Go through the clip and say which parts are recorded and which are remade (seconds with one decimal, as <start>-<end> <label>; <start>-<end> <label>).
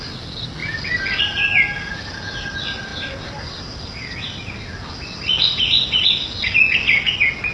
0.0-7.5 recorded